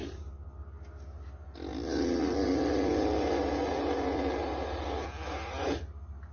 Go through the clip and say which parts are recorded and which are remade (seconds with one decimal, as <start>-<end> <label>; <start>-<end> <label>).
0.0-6.3 recorded